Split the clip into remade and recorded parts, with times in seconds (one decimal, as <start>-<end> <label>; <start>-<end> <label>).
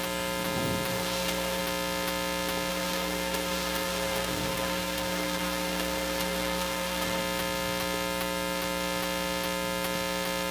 0.0-0.9 recorded; 0.9-1.6 remade; 1.6-2.7 recorded; 2.7-7.2 remade; 7.2-10.5 recorded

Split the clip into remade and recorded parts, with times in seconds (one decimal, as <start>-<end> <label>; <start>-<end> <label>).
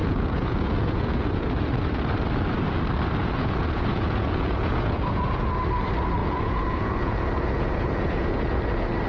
0.0-1.6 remade; 1.6-3.2 recorded; 3.2-5.5 remade; 5.5-6.2 recorded; 6.2-8.6 remade; 8.6-9.1 recorded